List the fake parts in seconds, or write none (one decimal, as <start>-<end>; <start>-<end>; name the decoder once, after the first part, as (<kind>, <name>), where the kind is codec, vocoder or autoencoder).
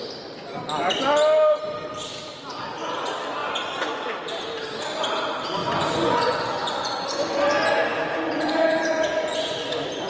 3.4-4.1 (vocoder, Vocos); 5.6-7.4; 8.3-10.1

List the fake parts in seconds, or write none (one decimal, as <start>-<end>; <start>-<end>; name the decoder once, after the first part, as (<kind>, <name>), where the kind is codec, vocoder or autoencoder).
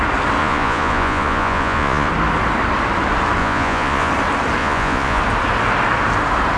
0.4-2.1 (vocoder, Vocos); 3.4-4.1; 4.6-5.2